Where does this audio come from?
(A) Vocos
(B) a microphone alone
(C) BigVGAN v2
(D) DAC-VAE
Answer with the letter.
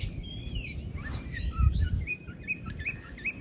C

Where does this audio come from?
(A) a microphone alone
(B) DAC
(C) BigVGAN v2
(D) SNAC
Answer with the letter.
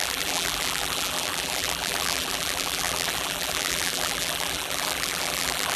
C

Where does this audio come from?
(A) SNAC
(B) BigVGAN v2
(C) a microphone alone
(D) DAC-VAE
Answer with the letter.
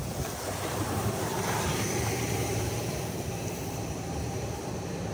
B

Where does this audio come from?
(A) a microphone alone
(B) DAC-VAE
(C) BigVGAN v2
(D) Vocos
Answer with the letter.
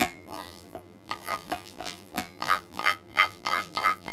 C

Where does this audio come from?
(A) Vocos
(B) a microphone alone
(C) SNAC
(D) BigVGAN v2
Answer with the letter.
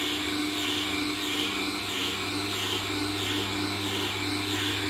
B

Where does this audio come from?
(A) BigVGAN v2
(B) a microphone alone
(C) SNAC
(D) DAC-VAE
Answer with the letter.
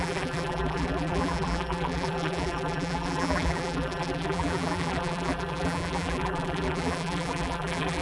A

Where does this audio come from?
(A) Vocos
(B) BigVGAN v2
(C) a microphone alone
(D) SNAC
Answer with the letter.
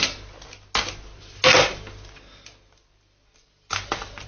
C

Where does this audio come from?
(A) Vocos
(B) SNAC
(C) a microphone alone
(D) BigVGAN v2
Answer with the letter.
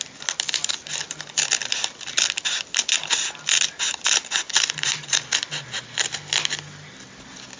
C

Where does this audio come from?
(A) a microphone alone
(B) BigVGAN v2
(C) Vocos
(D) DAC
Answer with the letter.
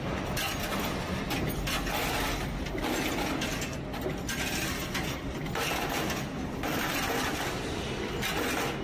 A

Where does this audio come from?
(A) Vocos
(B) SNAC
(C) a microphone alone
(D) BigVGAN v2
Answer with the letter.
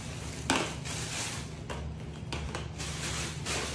C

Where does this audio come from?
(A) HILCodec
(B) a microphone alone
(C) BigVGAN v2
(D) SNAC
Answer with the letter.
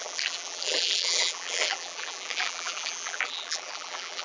C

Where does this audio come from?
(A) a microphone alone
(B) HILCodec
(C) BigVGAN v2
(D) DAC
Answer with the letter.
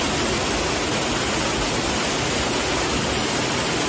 A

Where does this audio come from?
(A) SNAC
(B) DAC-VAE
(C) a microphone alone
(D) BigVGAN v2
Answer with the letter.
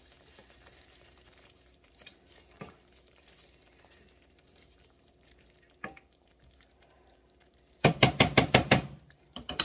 D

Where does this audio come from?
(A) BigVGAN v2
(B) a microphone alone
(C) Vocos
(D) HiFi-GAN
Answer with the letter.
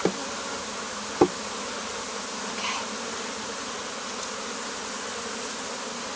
B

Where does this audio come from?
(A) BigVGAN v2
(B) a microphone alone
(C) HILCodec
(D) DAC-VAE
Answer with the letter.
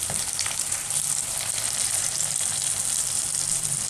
A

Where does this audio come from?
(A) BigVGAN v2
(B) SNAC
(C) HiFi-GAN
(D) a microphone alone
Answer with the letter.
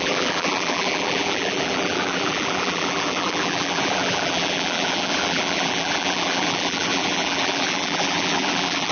A